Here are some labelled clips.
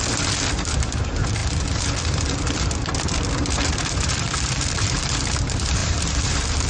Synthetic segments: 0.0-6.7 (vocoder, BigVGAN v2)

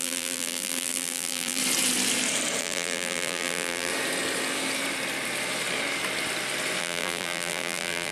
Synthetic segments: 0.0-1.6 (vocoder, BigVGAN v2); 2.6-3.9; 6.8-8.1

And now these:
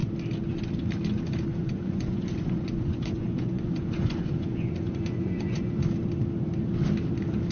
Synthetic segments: 1.6-5.7 (vocoder, Vocos)